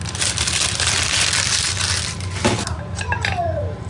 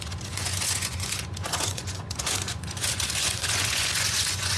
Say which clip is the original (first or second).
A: first